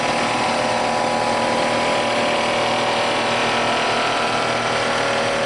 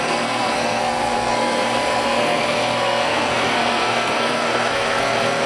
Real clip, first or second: first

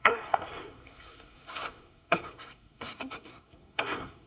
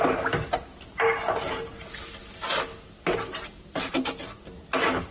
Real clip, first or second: second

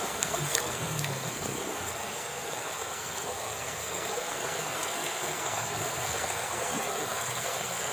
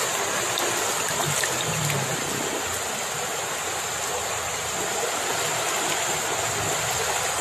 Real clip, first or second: second